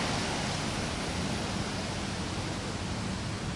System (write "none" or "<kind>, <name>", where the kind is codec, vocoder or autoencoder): none